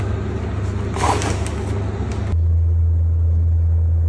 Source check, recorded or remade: recorded